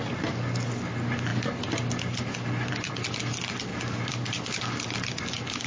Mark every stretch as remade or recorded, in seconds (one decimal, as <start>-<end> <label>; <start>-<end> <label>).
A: 0.0-3.7 recorded; 3.7-4.6 remade; 4.6-5.7 recorded